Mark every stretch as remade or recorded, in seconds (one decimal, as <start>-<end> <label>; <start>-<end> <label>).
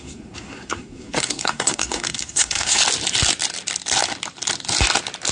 0.0-2.8 remade; 2.8-5.3 recorded